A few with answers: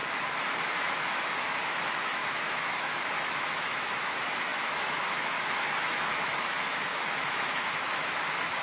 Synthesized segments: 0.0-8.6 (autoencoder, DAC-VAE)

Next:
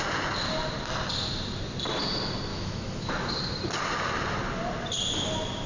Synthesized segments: 2.5-3.1 (autoencoder, DAC-VAE)

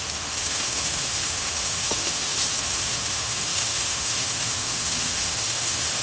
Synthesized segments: 0.0-6.0 (autoencoder, DAC-VAE)

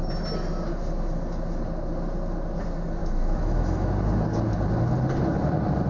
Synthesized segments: 3.0-3.9 (autoencoder, DAC-VAE)

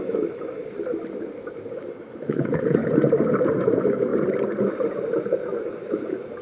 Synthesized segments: 0.0-0.6 (autoencoder, DAC-VAE); 1.7-2.8; 3.5-4.1; 5.6-6.4